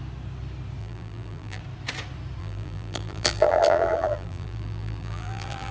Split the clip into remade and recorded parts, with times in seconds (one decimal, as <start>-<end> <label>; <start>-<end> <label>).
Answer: 0.0-0.8 recorded; 0.8-1.6 remade; 1.6-2.4 recorded; 2.4-5.7 remade